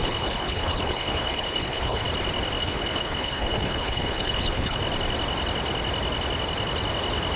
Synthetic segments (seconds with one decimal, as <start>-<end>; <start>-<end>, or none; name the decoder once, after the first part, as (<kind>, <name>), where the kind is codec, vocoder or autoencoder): 0.0-2.0 (codec, HILCodec); 2.6-4.8